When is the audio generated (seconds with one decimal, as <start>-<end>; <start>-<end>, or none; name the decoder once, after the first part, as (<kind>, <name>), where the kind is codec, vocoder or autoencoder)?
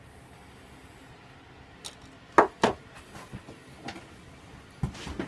none